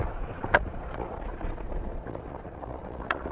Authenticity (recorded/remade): remade